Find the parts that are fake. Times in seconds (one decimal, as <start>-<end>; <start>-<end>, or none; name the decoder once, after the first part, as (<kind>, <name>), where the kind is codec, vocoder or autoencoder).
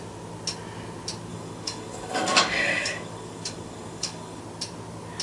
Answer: 1.3-4.4 (codec, DAC)